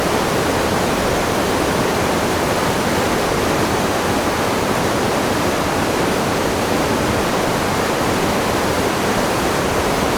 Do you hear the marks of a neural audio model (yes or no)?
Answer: yes